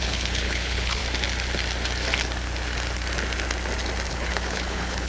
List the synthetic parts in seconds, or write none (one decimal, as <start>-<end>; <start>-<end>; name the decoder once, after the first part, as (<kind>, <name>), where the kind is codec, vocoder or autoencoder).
0.0-1.0 (codec, HILCodec); 4.1-5.1

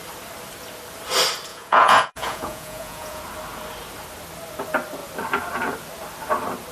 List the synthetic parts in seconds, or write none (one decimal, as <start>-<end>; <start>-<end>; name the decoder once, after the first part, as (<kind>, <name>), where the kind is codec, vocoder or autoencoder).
1.5-3.2 (vocoder, Vocos)

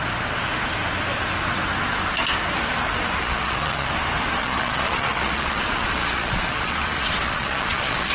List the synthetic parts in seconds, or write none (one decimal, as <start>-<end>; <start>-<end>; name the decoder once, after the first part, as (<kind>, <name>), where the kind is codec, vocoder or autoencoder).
3.2-3.9 (vocoder, Vocos); 4.4-8.1

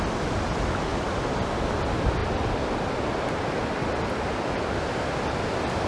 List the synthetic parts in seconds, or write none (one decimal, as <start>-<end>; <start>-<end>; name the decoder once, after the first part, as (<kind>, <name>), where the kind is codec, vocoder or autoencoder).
none